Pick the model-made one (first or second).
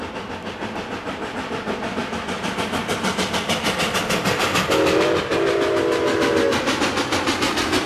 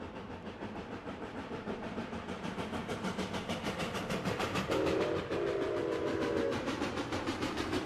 second